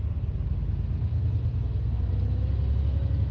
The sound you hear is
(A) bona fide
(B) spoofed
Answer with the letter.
A